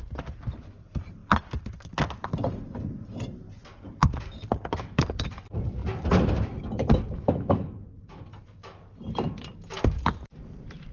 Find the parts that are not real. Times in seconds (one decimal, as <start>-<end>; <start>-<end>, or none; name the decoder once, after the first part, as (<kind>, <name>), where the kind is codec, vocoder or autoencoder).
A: 0.0-1.2 (vocoder, BigVGAN v2); 5.0-5.8; 6.6-10.9

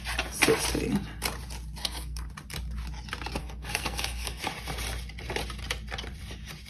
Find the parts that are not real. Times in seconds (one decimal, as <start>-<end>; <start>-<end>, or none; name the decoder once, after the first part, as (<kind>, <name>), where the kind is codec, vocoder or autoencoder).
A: 1.8-2.3 (codec, SNAC); 3.4-4.4